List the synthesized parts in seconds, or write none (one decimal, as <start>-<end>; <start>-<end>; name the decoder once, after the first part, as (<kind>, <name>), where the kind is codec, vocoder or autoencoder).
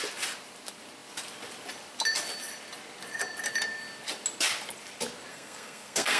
5.3-6.2 (codec, SNAC)